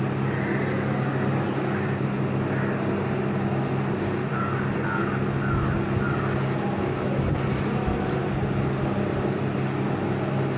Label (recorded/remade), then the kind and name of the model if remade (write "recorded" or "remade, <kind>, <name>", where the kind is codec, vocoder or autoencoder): recorded